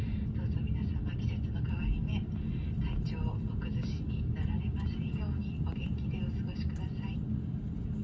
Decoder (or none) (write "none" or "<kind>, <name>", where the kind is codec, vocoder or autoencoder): none